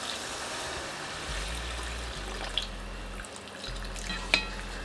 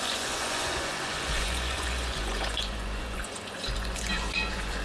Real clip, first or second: first